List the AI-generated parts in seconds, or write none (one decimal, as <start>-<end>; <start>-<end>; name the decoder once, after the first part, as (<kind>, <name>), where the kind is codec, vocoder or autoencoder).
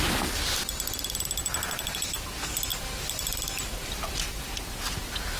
1.4-2.3 (vocoder, BigVGAN v2); 2.7-4.5